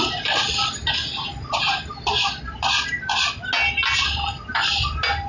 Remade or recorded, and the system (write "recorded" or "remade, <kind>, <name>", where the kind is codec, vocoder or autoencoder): recorded